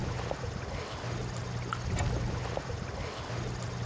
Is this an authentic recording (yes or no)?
yes